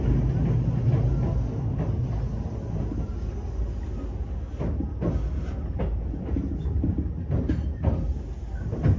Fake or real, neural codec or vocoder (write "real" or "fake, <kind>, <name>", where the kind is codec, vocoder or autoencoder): real